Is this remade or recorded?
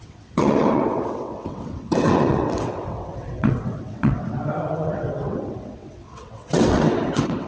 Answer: remade